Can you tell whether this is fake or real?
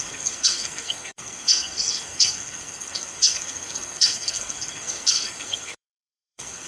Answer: fake